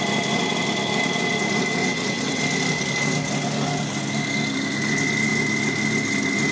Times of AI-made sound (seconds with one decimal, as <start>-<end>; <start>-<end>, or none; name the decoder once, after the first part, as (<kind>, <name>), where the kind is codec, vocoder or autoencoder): 1.8-2.4 (vocoder, WaveNeXt)